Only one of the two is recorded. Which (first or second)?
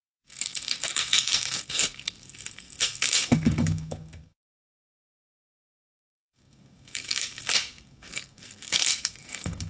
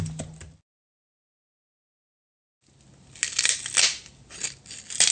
second